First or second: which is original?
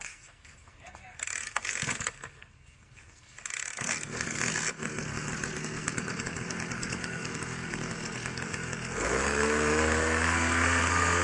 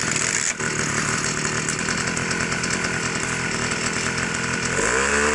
second